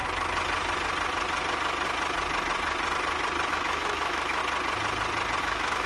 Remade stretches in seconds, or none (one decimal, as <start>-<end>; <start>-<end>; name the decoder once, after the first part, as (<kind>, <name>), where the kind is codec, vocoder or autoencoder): 3.5-4.4 (autoencoder, DAC-VAE); 5.4-5.9